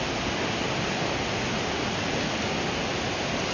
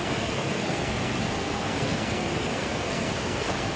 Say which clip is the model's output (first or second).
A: second